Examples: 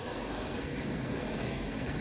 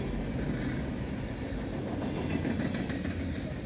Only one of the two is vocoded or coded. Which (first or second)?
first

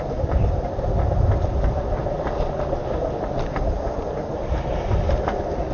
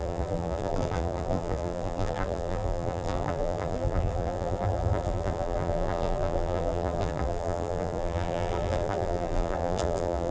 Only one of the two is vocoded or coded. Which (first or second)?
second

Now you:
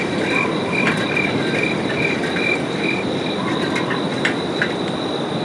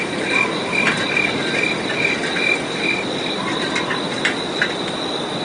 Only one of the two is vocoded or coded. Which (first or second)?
first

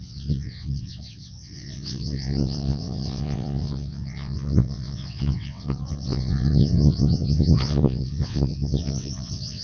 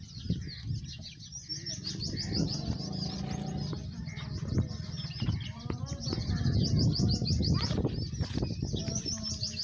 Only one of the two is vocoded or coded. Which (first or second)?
first